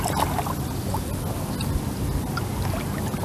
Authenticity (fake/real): real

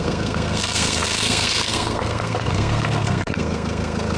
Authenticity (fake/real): fake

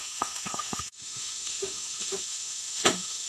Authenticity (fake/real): fake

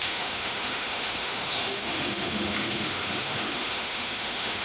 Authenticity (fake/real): fake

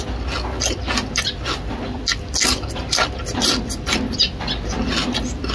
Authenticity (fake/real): real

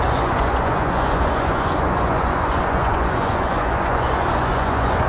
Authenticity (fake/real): fake